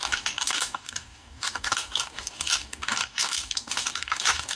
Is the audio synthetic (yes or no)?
yes